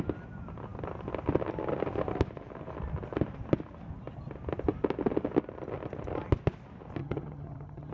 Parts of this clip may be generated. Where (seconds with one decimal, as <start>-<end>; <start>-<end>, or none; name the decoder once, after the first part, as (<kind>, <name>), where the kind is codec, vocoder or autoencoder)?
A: 7.0-7.9 (vocoder, HiFi-GAN)